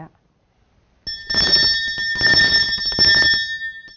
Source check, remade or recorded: recorded